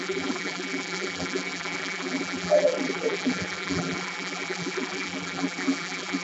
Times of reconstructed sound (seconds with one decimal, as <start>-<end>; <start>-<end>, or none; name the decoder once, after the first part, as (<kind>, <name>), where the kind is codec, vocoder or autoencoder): 0.0-6.2 (vocoder, BigVGAN v2)